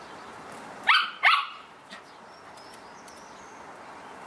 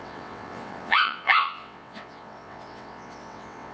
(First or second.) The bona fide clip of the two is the first